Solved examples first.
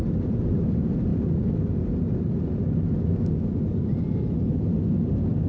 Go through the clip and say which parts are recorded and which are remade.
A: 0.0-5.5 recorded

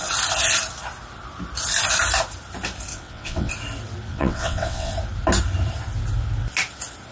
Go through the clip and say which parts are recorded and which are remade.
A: 0.0-2.9 recorded; 2.9-3.5 remade; 3.5-4.1 recorded; 4.1-4.9 remade; 4.9-7.1 recorded